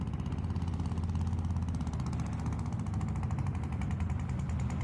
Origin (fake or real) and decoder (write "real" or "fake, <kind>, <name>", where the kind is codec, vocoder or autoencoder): real